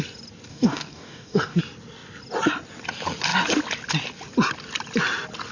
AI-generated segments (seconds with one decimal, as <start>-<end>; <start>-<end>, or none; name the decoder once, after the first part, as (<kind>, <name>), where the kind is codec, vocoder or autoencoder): 0.5-1.6 (codec, DAC)